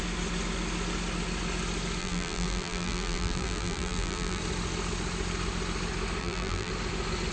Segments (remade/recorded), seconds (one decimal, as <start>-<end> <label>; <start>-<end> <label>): 0.0-2.0 recorded; 2.0-4.4 remade; 4.4-6.2 recorded; 6.2-6.7 remade; 6.7-7.3 recorded